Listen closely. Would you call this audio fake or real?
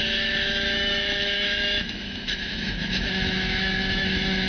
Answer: fake